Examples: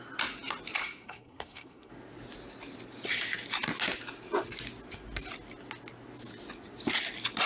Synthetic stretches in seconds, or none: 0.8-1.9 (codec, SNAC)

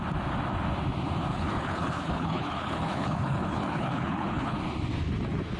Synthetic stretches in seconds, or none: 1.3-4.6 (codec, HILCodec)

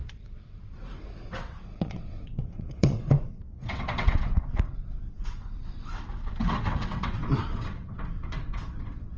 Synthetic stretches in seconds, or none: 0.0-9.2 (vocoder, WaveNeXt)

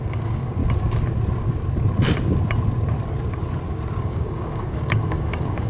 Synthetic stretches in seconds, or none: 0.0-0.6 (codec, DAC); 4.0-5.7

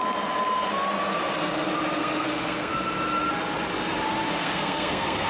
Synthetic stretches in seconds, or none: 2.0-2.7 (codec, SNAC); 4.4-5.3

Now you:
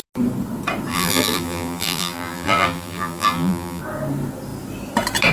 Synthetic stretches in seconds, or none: 0.9-3.8 (vocoder, BigVGAN v2)